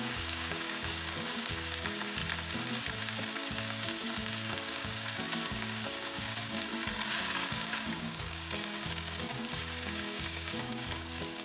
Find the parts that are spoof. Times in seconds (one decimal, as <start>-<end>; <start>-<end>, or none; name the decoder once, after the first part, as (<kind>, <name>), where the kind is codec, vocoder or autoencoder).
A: 0.0-2.2 (codec, DAC); 3.0-6.7; 7.2-11.4